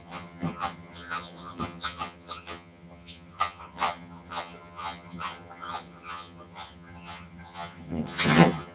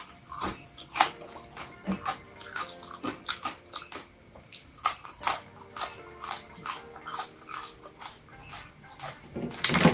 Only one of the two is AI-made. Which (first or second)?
first